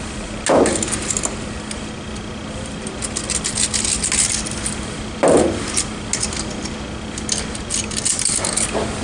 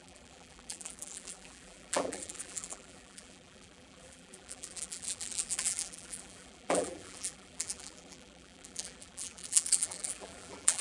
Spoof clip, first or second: second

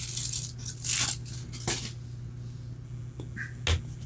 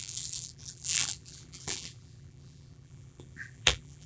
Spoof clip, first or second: second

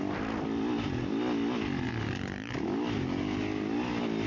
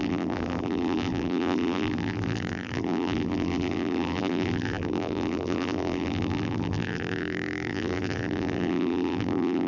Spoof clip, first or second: second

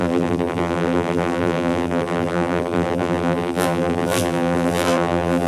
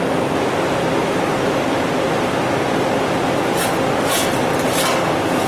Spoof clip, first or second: first